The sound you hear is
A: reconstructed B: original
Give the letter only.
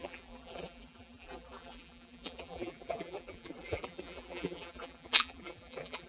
A